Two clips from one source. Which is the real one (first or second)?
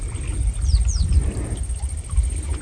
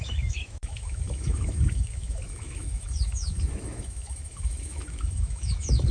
first